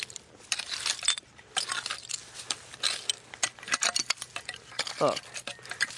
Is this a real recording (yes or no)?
yes